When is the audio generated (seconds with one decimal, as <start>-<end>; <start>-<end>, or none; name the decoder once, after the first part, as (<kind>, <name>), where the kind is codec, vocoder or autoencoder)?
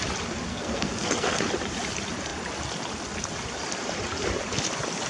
0.5-1.4 (codec, SNAC)